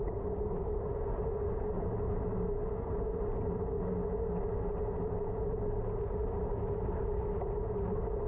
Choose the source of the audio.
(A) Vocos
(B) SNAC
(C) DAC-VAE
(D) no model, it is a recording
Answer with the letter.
D